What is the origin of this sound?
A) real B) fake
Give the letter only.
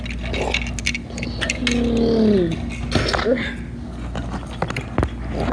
A